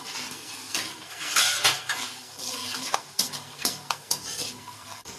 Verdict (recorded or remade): remade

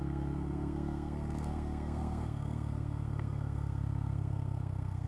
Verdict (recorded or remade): remade